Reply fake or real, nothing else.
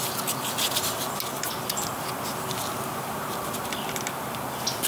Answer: real